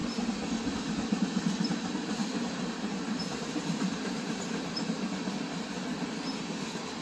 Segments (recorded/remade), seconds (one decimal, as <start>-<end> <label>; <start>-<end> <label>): 0.0-2.2 recorded; 2.2-4.9 remade; 4.9-7.0 recorded

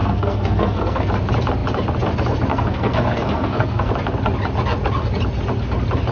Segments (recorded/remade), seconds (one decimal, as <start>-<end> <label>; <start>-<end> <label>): 0.0-1.1 remade; 1.1-2.5 recorded; 2.5-3.9 remade; 3.9-6.1 recorded

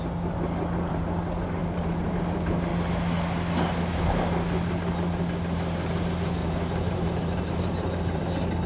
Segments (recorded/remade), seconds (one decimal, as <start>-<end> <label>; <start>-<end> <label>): 0.0-1.6 recorded; 1.6-2.2 remade; 2.2-6.4 recorded; 6.4-8.2 remade; 8.2-8.7 recorded

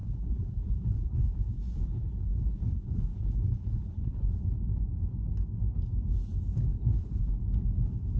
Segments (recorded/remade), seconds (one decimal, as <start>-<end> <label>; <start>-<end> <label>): 0.0-4.4 remade; 4.4-6.7 recorded; 6.7-7.3 remade; 7.3-8.2 recorded

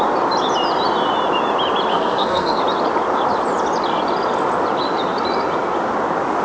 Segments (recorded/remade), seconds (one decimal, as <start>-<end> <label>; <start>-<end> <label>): 0.0-1.9 recorded; 1.9-2.6 remade; 2.6-6.4 recorded

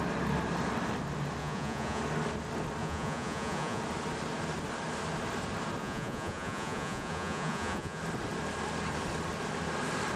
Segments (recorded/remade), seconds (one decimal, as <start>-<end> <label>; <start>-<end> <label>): 0.0-1.4 recorded; 1.4-2.0 remade; 2.0-2.8 recorded; 2.8-3.8 remade; 3.8-5.8 recorded; 5.8-8.0 remade; 8.0-10.2 recorded